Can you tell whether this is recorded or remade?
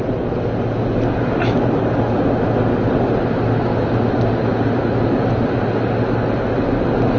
recorded